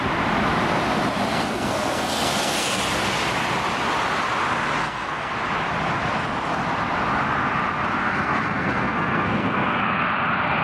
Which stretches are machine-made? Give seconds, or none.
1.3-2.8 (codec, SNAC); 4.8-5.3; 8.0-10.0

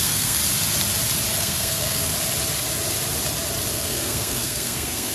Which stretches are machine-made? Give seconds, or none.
0.0-0.4 (codec, SNAC); 1.4-2.1; 3.7-5.1

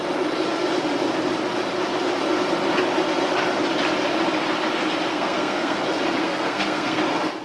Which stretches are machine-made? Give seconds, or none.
5.1-5.8 (codec, SNAC); 6.2-7.0

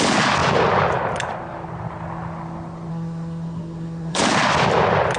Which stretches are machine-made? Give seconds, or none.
2.9-4.2 (codec, SNAC)

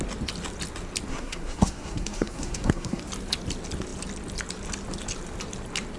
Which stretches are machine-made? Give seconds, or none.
1.1-3.0 (codec, SNAC)

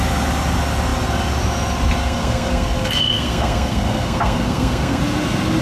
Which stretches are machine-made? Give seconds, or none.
2.0-5.0 (codec, SNAC)